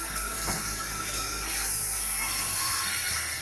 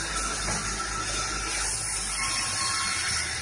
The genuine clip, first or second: second